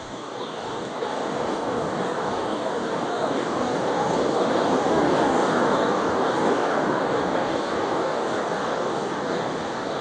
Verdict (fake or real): fake